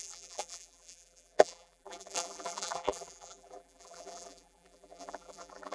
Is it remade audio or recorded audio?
remade